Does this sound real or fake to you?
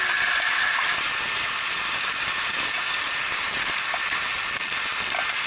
real